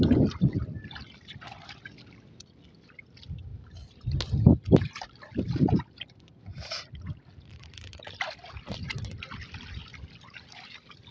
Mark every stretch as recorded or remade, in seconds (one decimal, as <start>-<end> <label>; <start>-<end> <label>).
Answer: 0.0-11.1 recorded